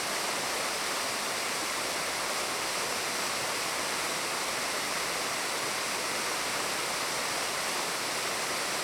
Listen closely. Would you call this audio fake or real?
real